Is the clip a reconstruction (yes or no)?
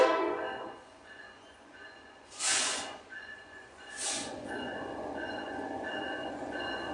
yes